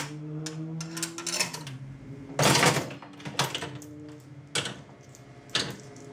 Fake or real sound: real